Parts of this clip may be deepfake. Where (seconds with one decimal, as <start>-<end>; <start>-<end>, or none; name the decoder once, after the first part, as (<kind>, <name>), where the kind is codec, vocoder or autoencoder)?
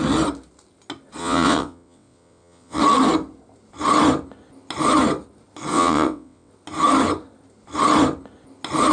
1.2-2.8 (vocoder, WaveNeXt); 5.7-6.5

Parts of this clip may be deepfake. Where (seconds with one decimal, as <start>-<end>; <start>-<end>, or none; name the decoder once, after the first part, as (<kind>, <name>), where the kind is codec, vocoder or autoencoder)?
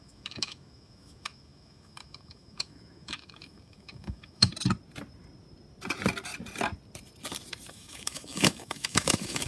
0.0-4.5 (autoencoder, DAC-VAE); 7.7-9.5